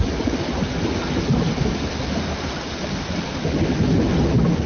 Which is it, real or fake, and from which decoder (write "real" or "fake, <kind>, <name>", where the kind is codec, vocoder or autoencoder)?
real